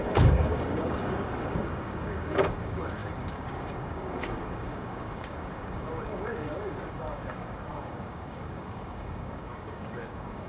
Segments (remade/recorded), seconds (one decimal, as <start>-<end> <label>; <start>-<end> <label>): 0.0-10.5 remade